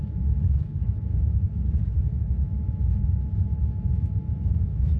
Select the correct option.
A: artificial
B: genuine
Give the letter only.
A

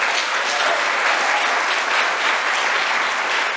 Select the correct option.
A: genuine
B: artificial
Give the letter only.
A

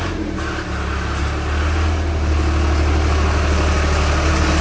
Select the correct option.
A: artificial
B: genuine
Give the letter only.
B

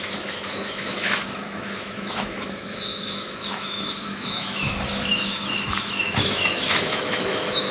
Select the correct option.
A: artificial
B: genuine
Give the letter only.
A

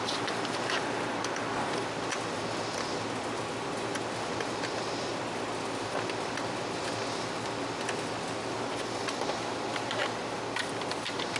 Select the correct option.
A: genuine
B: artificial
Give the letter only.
A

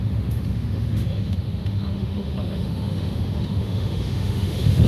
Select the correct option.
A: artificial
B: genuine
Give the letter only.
A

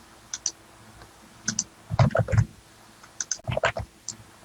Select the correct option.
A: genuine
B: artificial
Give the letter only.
A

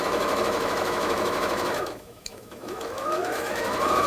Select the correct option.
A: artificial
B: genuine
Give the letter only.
A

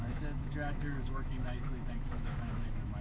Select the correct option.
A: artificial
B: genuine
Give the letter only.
A